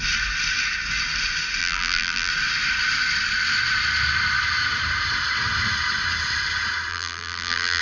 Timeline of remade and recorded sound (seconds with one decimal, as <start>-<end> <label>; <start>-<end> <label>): 0.0-1.6 recorded; 1.6-2.3 remade; 2.3-6.9 recorded; 6.9-7.8 remade